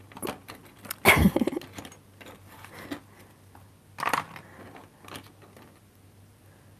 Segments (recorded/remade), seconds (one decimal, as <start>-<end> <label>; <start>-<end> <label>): 0.0-6.8 recorded